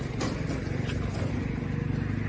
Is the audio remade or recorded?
recorded